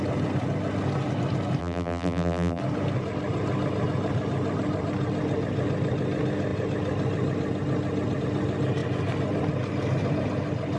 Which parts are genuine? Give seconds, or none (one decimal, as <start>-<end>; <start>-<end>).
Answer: 0.0-1.6; 2.6-10.8